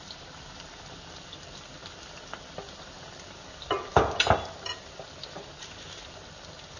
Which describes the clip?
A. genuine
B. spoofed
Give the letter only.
A